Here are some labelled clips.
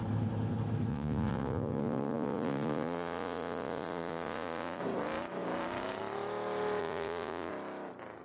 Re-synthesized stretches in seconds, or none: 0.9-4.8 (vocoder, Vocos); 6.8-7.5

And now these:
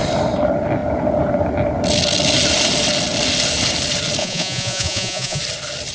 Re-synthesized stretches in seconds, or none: 4.2-5.4 (vocoder, Vocos)

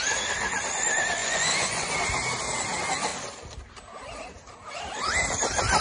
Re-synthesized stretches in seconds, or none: 1.2-1.9 (vocoder, Vocos)

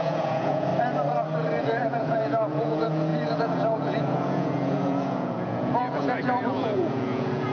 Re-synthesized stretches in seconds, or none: 0.0-0.7 (vocoder, Vocos); 1.6-7.5